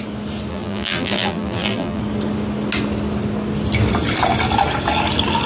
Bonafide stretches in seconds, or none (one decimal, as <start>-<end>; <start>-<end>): 0.0-0.5; 2.0-5.5